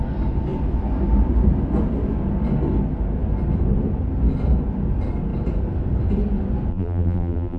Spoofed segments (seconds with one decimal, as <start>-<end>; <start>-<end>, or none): 6.7-7.6